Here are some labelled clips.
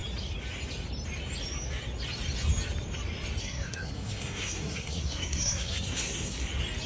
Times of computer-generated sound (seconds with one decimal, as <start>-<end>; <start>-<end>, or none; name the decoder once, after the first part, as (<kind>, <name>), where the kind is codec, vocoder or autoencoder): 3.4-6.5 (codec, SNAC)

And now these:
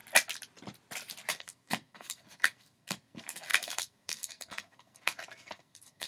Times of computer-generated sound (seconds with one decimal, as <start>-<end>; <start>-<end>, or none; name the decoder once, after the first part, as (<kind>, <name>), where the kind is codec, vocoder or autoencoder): 1.3-6.1 (codec, SNAC)

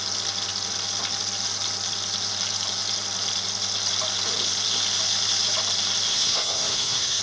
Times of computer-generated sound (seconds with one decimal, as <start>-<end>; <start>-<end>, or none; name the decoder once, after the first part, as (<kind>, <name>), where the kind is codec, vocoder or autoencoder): 6.1-7.2 (codec, SNAC)

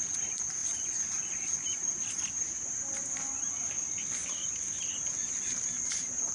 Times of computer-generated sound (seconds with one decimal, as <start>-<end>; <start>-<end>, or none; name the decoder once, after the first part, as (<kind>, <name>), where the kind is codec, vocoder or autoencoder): none

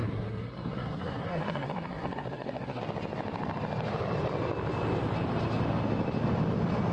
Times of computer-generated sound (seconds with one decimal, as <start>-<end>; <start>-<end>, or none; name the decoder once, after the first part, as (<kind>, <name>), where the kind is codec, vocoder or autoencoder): 0.0-2.8 (codec, SNAC)